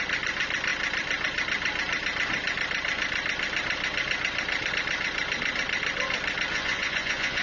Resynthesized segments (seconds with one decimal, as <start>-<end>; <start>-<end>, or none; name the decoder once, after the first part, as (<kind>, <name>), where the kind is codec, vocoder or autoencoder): 6.5-7.4 (vocoder, Vocos)